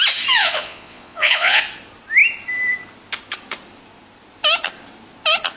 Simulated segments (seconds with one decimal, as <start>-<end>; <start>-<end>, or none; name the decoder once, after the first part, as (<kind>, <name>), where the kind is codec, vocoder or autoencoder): 0.4-1.6 (vocoder, Vocos)